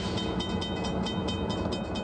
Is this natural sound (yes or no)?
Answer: yes